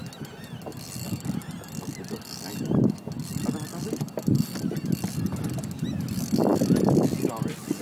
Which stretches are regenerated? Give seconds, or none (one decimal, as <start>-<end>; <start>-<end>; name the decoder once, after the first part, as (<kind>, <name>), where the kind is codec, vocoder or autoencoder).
none